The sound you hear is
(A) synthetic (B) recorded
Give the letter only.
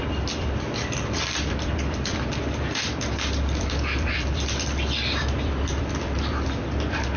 A